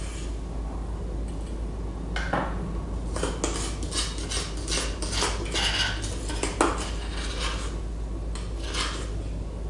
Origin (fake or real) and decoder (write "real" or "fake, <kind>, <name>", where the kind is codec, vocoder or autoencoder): real